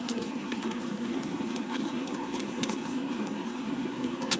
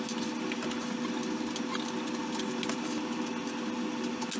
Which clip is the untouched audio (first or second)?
second